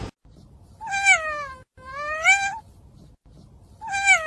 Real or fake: real